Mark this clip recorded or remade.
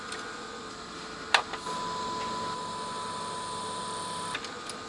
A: recorded